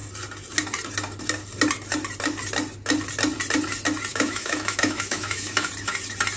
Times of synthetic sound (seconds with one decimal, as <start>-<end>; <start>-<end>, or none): 4.1-5.7